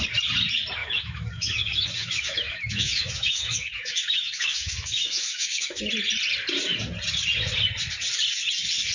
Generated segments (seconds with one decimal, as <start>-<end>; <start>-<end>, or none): 0.8-5.8